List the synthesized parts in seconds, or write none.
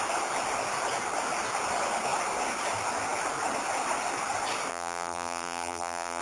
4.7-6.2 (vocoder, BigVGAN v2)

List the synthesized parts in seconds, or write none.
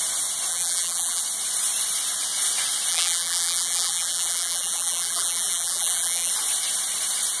0.5-1.2 (vocoder, BigVGAN v2); 2.9-6.3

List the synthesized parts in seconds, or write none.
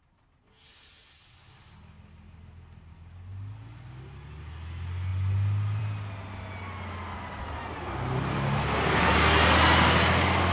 none